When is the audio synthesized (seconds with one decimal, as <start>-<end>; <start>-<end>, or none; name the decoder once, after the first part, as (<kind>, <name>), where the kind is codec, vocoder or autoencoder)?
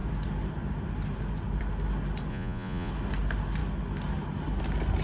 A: 2.3-2.9 (vocoder, Vocos)